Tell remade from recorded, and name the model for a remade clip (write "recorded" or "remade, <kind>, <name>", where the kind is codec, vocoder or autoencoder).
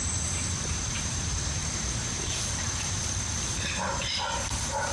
remade, vocoder, BigVGAN v2